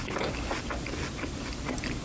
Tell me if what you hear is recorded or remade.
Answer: recorded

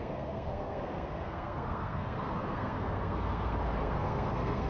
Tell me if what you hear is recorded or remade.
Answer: remade